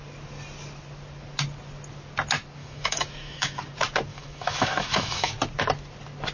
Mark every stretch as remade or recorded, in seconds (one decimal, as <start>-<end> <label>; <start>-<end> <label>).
0.0-2.6 recorded; 2.6-3.6 remade; 3.6-4.1 recorded; 4.1-5.3 remade; 5.3-6.3 recorded